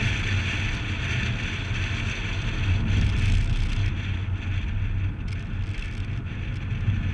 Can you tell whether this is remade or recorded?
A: recorded